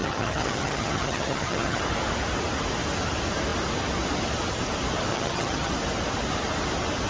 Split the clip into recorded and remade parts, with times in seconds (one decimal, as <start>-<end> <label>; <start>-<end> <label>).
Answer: 0.0-1.8 remade; 1.8-5.1 recorded; 5.1-5.7 remade; 5.7-7.1 recorded